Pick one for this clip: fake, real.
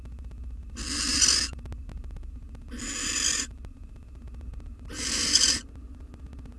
real